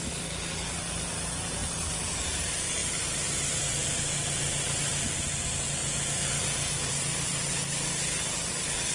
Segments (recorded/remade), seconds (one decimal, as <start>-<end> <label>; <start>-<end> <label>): 0.0-8.9 recorded